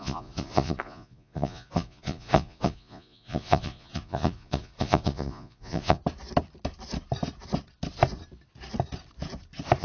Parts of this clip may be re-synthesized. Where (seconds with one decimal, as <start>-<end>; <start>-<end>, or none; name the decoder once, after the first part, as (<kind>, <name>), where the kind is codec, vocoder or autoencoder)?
0.0-6.0 (vocoder, Vocos)

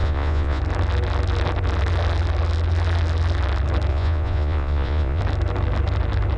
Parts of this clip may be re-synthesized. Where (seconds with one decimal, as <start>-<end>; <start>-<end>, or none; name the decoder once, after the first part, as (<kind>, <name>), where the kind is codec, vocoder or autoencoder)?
0.0-0.6 (vocoder, Vocos); 3.9-5.2

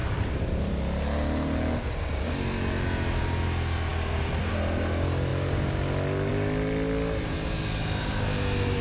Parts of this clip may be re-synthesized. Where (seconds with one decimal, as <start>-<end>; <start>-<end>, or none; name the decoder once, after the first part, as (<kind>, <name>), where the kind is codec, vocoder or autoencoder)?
none

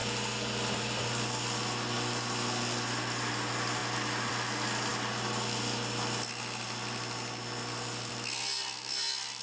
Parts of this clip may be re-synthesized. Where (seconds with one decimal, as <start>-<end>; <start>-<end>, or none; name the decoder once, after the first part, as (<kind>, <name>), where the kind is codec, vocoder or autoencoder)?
none

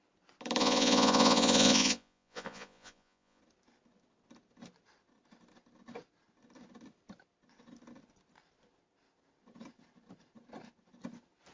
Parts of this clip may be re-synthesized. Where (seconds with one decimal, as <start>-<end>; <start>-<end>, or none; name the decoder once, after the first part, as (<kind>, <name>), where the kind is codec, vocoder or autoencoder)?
0.6-3.4 (vocoder, Vocos)